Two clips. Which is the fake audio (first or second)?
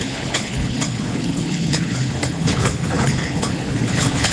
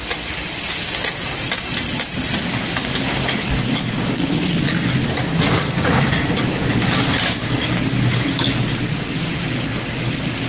first